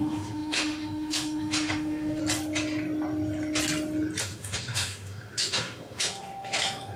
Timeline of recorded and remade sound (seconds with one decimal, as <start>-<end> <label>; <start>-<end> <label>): 0.0-2.2 remade; 2.2-4.2 recorded; 4.2-7.0 remade

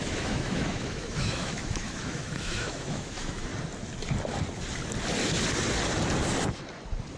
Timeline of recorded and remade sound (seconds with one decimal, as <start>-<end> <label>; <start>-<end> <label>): 0.0-3.5 remade; 3.5-7.2 recorded

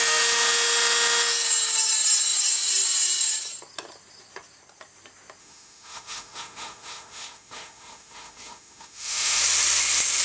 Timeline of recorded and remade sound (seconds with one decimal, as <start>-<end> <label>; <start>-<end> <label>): 0.0-5.4 recorded; 5.4-9.4 remade; 9.4-10.2 recorded

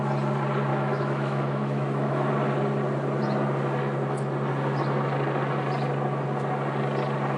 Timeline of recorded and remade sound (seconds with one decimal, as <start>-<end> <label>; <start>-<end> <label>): 0.0-0.7 recorded; 0.7-2.3 remade; 2.3-7.4 recorded

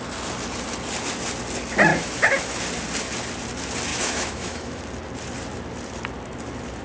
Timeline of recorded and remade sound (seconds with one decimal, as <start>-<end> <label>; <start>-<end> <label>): 0.0-1.9 recorded; 1.9-2.6 remade; 2.6-3.9 recorded; 3.9-4.8 remade; 4.8-6.8 recorded